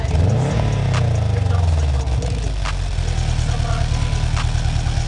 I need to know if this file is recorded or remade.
recorded